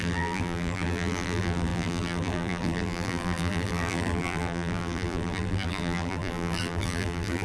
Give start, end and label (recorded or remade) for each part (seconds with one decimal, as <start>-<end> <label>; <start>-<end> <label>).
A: 0.0-7.4 remade